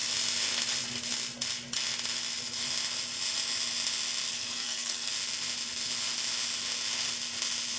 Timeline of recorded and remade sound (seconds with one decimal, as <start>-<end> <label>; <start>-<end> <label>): 0.0-4.3 recorded; 4.3-5.1 remade; 5.1-7.8 recorded